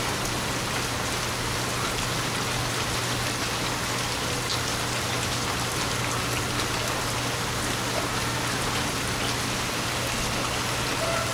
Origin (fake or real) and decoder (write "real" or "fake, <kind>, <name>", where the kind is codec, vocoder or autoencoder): real